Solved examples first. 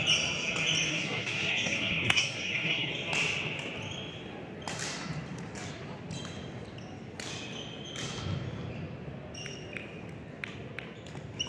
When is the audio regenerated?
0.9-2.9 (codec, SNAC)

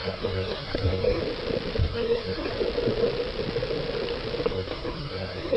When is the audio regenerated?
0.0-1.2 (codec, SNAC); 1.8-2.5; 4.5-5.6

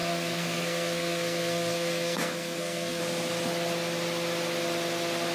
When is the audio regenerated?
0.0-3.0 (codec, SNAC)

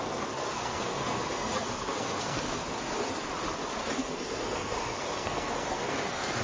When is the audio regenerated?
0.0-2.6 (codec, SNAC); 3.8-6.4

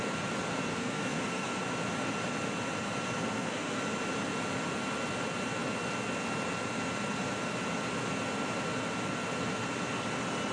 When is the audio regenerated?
0.7-1.6 (codec, SNAC); 3.2-3.8

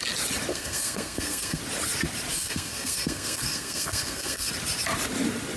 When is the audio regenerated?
0.5-1.6 (codec, SNAC); 2.3-4.5